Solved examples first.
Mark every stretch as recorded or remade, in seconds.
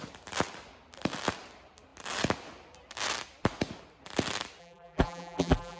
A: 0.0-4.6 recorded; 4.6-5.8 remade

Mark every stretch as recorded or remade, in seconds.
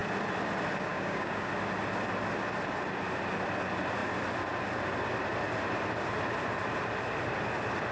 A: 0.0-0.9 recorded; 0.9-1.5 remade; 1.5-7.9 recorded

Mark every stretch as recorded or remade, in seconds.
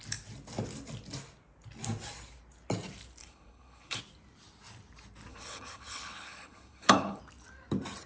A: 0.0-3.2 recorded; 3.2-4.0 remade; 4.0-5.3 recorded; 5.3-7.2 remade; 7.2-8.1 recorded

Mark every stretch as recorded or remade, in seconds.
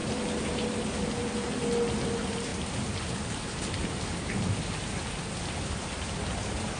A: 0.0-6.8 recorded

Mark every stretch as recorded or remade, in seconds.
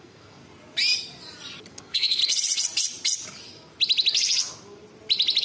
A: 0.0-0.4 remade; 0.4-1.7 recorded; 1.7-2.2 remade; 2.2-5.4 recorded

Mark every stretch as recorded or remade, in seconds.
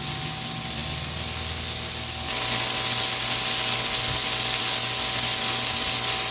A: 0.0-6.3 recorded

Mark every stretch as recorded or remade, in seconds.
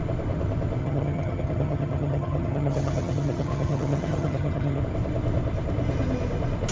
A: 0.0-0.8 recorded; 0.8-4.8 remade; 4.8-6.7 recorded